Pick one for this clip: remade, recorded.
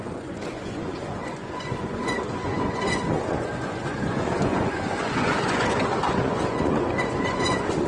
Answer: remade